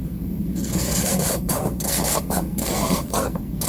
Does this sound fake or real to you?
fake